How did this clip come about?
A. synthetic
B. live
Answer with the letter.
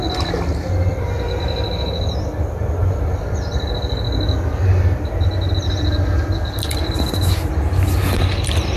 B